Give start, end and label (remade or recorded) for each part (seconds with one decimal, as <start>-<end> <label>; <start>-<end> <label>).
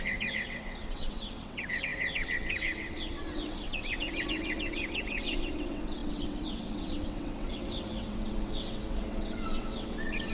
0.0-10.3 remade